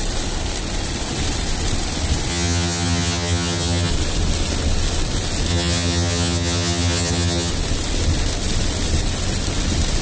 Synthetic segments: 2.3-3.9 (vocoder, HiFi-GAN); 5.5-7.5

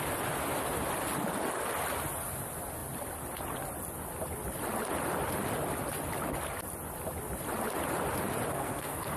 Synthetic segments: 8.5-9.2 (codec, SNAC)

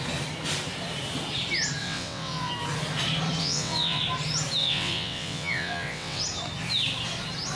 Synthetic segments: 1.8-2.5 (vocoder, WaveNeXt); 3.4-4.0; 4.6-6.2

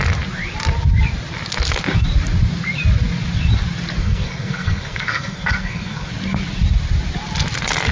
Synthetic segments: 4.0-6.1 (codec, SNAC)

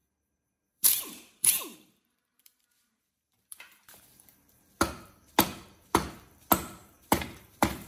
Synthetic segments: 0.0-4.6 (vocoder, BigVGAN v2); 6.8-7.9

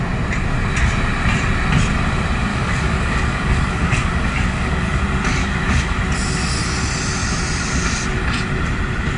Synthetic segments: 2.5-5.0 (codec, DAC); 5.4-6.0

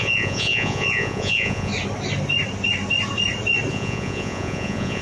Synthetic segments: 0.0-1.7 (vocoder, Vocos); 3.7-5.0